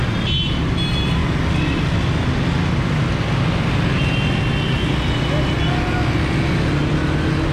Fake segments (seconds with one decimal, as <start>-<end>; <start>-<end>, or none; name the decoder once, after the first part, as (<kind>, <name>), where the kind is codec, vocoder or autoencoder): none